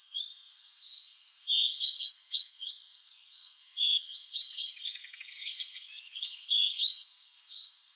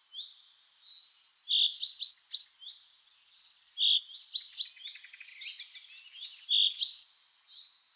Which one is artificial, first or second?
first